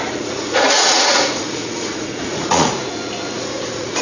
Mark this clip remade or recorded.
remade